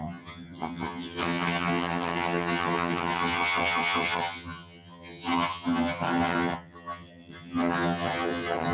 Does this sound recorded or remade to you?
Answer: remade